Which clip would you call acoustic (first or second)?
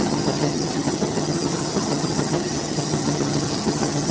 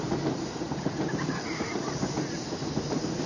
second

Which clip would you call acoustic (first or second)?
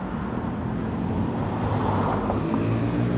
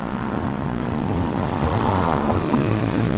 first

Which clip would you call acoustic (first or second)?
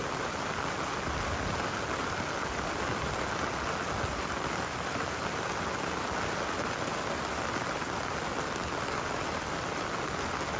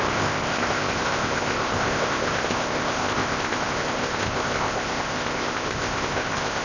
first